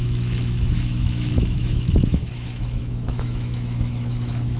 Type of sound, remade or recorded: remade